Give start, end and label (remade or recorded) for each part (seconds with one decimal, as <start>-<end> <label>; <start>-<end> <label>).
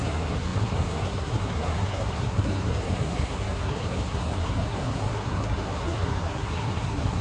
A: 0.0-7.2 remade